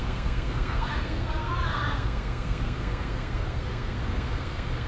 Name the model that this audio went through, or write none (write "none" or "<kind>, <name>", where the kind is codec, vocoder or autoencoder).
codec, SNAC